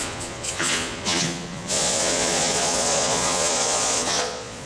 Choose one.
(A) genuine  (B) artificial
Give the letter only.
B